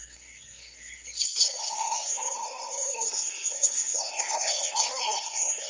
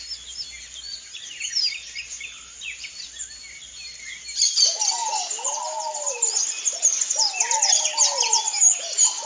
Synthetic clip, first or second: first